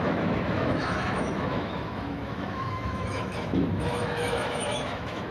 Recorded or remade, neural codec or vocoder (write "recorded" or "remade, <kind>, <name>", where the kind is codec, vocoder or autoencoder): remade, autoencoder, DAC-VAE